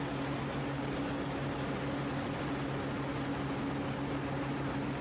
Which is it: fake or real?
real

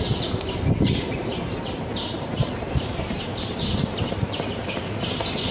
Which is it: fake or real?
fake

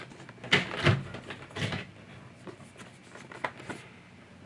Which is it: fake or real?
real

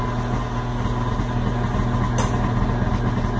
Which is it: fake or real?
real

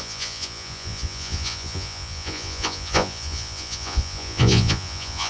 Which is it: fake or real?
fake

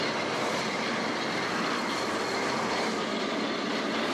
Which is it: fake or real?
real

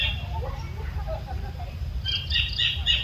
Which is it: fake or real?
real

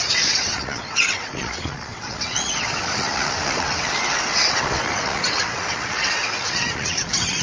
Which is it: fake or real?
fake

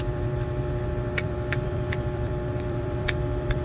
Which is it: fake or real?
fake